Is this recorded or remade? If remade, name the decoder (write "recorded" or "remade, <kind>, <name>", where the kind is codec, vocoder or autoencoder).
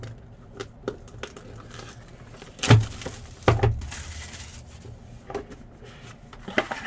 recorded